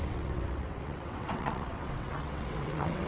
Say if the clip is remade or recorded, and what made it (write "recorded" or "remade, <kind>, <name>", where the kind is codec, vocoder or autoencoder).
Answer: remade, vocoder, WaveNeXt